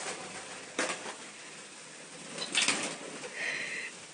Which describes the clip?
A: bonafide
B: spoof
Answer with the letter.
A